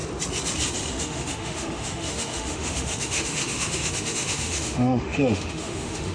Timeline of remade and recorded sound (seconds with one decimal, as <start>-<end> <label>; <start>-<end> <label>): 0.0-0.9 recorded; 0.9-6.1 remade